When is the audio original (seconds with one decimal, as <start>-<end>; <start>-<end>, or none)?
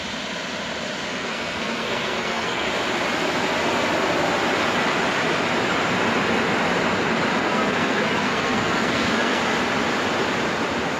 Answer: 0.0-1.1; 2.7-7.4; 9.4-11.0